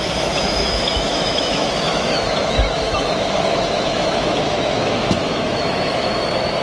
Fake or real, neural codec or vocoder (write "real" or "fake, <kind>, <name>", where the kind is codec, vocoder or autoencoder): fake, autoencoder, DAC-VAE